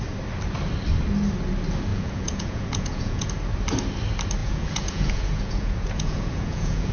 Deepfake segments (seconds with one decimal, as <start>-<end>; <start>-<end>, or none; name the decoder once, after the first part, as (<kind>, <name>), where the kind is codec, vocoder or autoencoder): 1.9-3.3 (vocoder, Vocos); 4.4-6.9